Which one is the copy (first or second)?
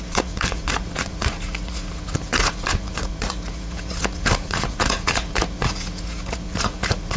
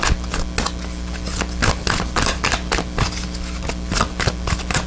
first